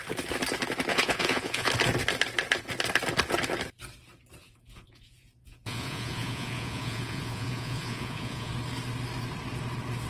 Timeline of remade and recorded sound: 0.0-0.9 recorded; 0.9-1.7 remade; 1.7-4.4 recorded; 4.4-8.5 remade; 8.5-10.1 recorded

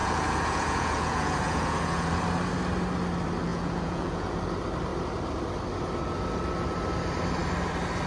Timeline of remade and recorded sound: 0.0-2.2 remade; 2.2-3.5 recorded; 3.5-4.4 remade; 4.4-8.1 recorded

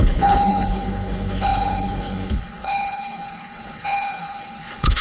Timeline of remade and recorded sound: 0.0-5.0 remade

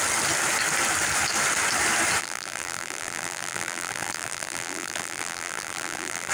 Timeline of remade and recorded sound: 0.0-2.2 recorded; 2.2-6.3 remade

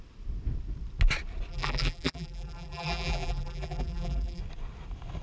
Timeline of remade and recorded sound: 0.0-1.5 recorded; 1.5-4.4 remade; 4.4-5.2 recorded

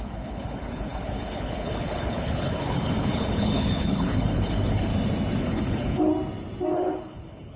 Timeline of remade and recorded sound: 0.0-4.9 remade; 4.9-5.4 recorded; 5.4-6.1 remade; 6.1-6.7 recorded; 6.7-7.6 remade

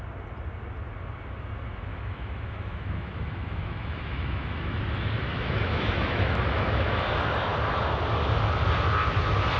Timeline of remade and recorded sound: 0.0-1.9 recorded; 1.9-4.8 remade; 4.8-5.3 recorded; 5.3-7.0 remade; 7.0-9.6 recorded